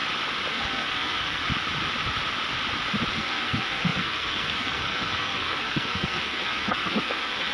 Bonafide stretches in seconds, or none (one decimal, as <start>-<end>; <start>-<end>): 0.0-0.5; 1.4-3.1